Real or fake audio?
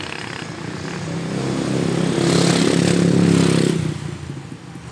real